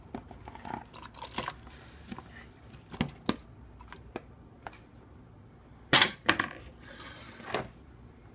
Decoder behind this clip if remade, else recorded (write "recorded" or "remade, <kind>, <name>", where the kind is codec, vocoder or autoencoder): recorded